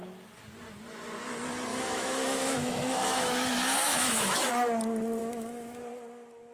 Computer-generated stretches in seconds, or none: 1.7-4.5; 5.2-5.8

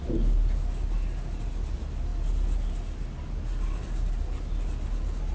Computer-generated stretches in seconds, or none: none

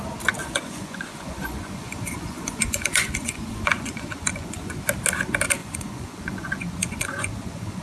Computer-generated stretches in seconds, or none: 0.4-4.8; 5.6-7.8

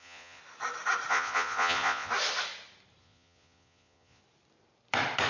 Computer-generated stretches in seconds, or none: 0.0-0.4; 1.1-2.1; 3.0-4.2

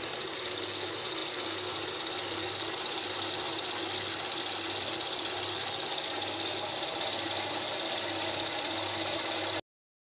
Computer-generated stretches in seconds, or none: none